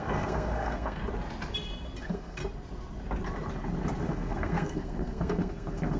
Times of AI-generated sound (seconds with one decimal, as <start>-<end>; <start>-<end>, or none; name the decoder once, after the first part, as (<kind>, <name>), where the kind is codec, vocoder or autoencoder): 0.0-1.0 (codec, SNAC); 2.0-2.4; 4.0-6.0